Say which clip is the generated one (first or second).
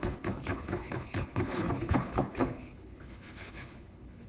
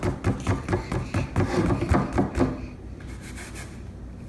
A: first